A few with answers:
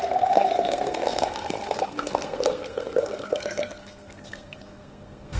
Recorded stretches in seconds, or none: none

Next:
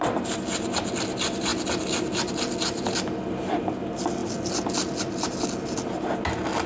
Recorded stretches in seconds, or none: 0.0-6.7

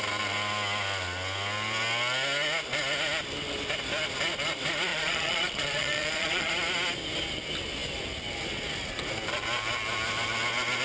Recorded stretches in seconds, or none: 0.0-4.9; 6.5-10.8

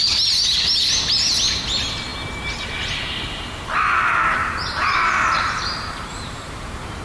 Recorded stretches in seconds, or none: 0.0-4.4

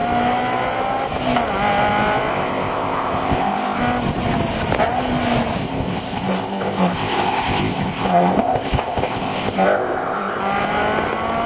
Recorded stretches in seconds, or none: 0.0-2.3; 3.8-5.6; 10.4-11.5

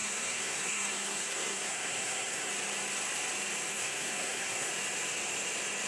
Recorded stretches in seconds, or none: 2.5-3.7; 4.7-5.9